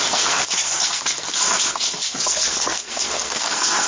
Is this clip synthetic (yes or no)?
yes